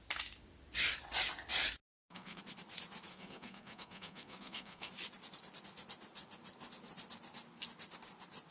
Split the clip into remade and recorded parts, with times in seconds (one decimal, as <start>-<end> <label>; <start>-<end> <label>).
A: 0.0-1.9 recorded; 1.9-2.4 remade; 2.4-3.1 recorded; 3.1-4.9 remade; 4.9-8.5 recorded